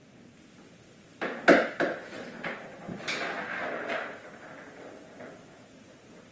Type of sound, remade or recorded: recorded